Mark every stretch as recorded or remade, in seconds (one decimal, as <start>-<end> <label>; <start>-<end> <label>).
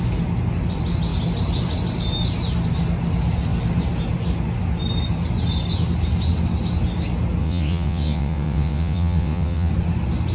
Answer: 0.0-7.4 recorded; 7.4-9.7 remade; 9.7-10.3 recorded